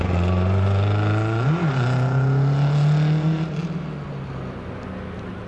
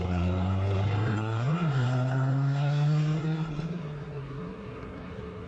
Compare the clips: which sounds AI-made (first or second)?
second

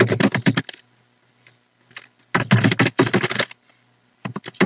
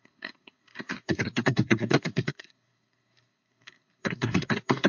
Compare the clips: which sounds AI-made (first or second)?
second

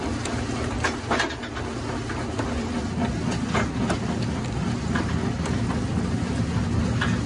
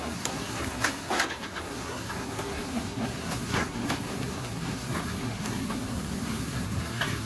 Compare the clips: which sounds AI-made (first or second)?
second